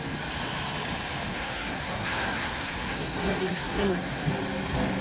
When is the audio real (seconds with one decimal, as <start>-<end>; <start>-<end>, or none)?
0.0-1.3; 4.3-5.0

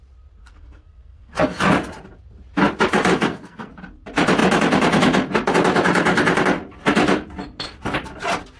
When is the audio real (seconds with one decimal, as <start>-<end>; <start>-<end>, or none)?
0.0-0.4; 1.6-3.1; 3.7-8.6

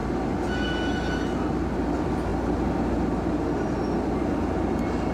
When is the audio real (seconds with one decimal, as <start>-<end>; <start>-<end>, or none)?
0.0-5.1

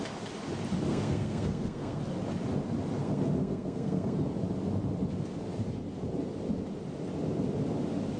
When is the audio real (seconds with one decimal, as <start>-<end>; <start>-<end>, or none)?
0.0-0.9; 2.0-3.0; 4.3-8.2

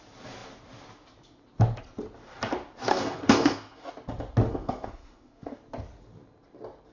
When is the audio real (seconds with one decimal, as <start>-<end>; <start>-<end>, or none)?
0.0-2.9; 3.9-4.5; 5.6-6.9

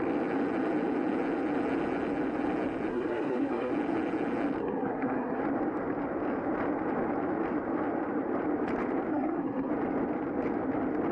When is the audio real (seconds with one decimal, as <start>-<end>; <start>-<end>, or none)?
0.0-2.9; 3.7-4.6; 5.4-9.1; 9.7-11.1